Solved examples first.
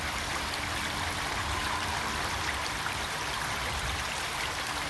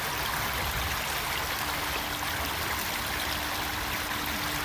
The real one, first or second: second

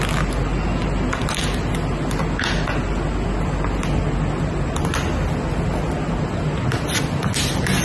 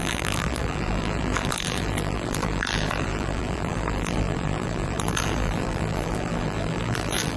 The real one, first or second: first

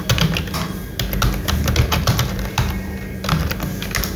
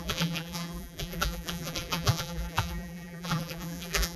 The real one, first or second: first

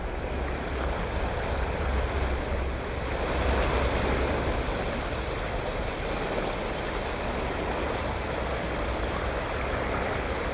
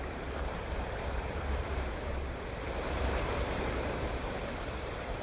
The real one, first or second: first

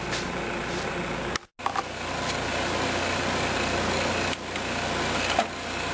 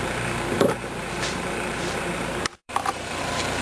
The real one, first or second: first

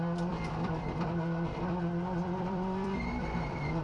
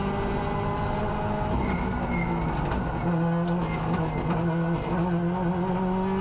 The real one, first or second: second